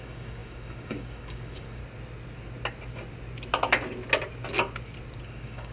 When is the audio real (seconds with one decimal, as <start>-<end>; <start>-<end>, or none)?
1.8-5.2